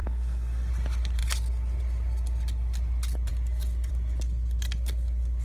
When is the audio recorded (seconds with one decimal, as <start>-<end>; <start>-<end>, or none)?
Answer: 0.7-5.4